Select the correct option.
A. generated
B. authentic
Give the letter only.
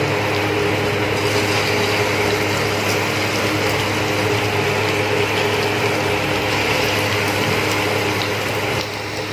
B